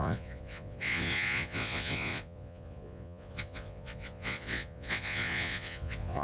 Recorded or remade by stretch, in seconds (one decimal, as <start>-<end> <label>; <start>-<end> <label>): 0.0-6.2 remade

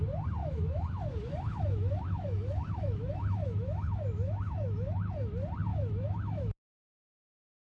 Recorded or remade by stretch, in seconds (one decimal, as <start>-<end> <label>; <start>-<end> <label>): 0.0-0.4 recorded; 0.4-5.1 remade; 5.1-5.7 recorded; 5.7-7.8 remade

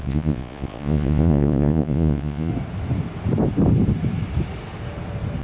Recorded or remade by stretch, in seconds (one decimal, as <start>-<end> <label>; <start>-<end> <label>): 0.0-2.5 remade; 2.5-5.4 recorded

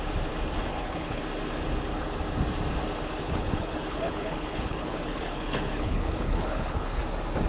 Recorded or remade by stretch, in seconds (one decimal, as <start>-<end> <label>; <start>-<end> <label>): 0.0-0.7 recorded; 0.7-1.2 remade; 1.2-3.2 recorded; 3.2-7.0 remade; 7.0-7.5 recorded